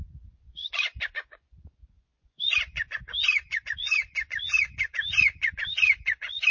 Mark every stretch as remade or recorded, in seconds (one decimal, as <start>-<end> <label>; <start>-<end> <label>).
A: 0.0-6.5 remade